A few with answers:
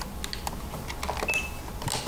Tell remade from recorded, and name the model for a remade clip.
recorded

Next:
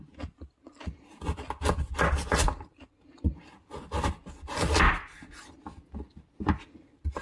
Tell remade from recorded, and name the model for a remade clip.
recorded